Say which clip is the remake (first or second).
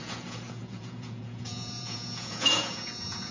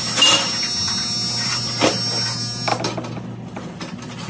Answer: first